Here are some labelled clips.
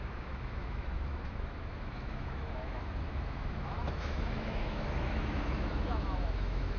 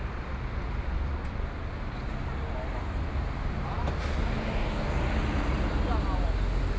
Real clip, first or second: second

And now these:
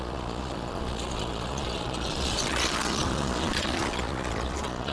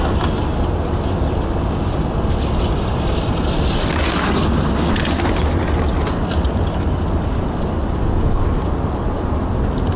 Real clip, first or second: second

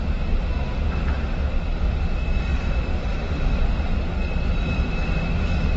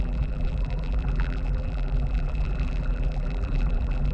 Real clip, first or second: first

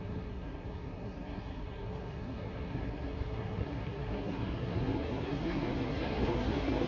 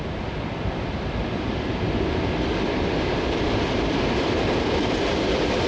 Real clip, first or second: second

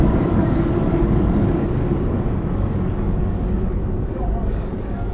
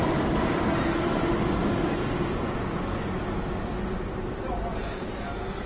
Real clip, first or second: second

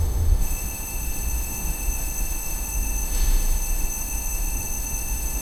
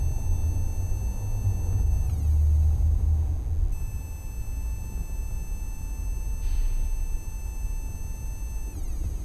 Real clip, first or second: second